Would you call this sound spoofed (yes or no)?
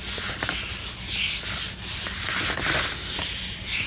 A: no